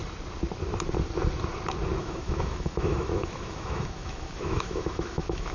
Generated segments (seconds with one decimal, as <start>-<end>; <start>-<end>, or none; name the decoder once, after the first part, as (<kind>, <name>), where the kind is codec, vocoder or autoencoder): 2.0-5.5 (autoencoder, DAC-VAE)